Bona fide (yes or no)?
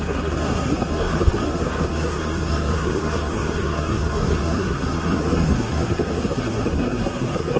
no